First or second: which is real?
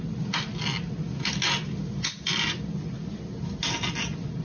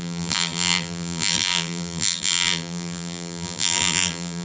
first